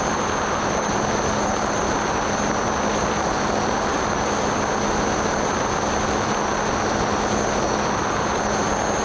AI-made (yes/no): no